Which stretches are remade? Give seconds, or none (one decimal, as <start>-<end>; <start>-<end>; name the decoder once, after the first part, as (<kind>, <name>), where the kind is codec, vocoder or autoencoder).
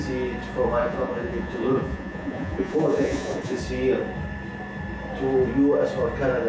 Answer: 0.8-3.6 (vocoder, Vocos)